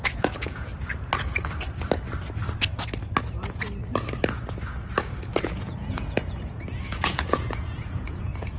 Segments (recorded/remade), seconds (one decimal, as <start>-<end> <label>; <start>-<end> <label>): 0.0-0.7 remade; 0.7-5.4 recorded; 5.4-8.6 remade